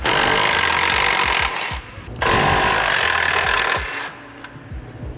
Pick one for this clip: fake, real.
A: real